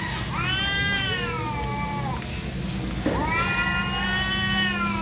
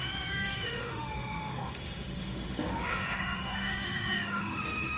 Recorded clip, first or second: first